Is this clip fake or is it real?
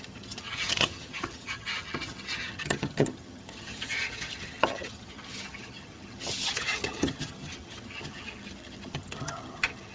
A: fake